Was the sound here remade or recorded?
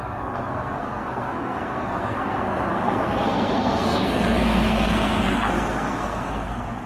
remade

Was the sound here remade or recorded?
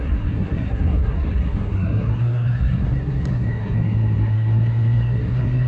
remade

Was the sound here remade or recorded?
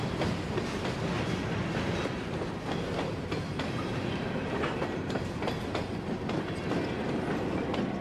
recorded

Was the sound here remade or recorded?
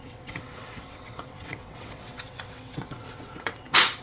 remade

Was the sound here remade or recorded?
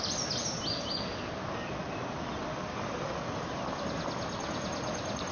recorded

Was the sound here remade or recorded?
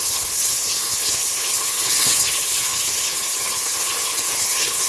remade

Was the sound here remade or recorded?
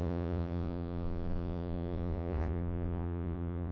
remade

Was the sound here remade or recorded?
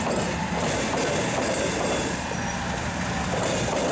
recorded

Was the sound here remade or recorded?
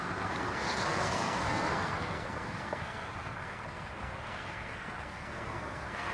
remade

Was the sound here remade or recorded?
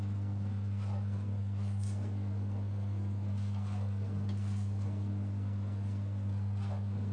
remade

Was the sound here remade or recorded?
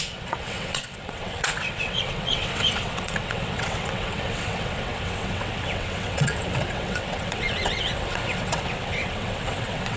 remade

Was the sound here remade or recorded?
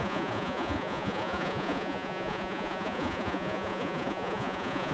remade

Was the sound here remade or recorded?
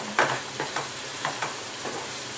remade